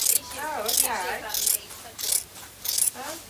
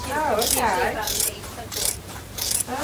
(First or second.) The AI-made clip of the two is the second